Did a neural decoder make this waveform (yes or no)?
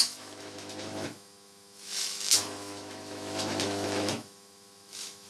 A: yes